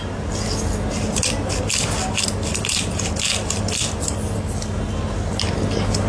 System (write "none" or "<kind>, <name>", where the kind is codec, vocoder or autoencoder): none